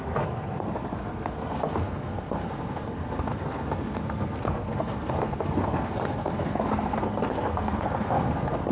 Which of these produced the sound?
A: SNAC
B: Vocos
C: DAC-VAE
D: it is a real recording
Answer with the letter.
A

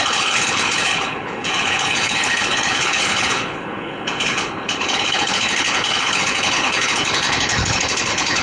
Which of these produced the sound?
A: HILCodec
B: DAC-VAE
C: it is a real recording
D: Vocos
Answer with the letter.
A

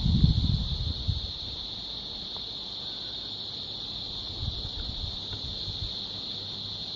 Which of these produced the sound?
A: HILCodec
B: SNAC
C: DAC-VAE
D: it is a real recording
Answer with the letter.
D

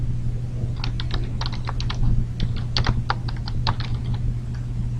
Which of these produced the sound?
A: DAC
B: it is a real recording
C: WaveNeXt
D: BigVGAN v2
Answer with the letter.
B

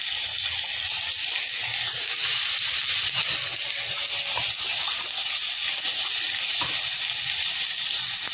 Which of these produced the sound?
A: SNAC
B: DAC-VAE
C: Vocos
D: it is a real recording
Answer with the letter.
D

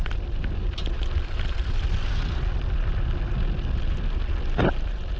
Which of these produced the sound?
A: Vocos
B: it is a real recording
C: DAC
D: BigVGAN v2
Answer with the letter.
B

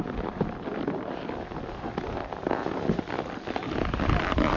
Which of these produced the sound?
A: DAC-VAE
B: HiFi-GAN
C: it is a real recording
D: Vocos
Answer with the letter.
C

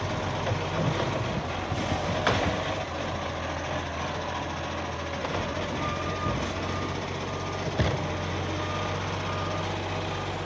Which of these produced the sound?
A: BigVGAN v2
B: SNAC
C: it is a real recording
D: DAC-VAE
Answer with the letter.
C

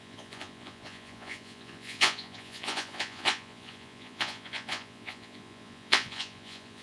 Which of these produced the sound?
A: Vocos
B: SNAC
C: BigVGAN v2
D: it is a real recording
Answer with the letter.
A